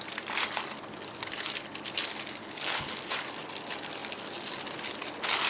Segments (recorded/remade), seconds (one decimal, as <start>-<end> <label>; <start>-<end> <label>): 0.0-2.4 recorded; 2.4-2.9 remade; 2.9-5.5 recorded